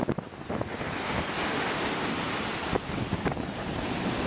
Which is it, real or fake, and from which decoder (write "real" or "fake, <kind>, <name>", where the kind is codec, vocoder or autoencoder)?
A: real